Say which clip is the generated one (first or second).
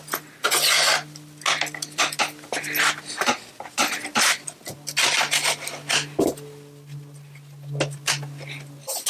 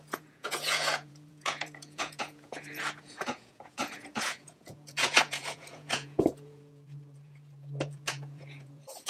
second